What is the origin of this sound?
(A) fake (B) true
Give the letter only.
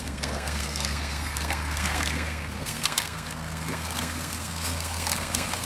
A